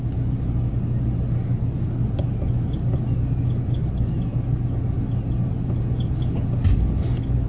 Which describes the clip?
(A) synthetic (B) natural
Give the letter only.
B